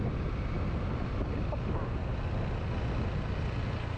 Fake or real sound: real